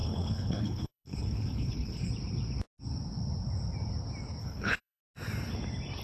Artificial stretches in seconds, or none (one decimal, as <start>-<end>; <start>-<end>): 0.0-2.1; 4.4-5.0